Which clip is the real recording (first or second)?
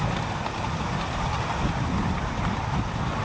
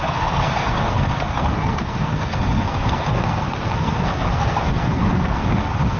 first